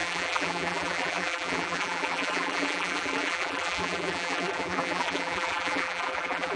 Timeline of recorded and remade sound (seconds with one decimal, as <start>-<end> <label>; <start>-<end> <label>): 0.0-6.6 remade